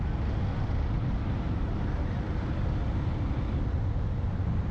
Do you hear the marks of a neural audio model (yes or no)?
no